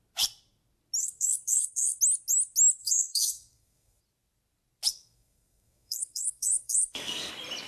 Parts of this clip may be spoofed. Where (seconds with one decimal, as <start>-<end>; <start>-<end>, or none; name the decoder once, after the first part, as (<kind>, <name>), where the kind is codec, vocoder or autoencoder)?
1.0-2.0 (codec, SNAC); 2.8-4.0; 4.9-7.3